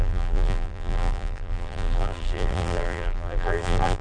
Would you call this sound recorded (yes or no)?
no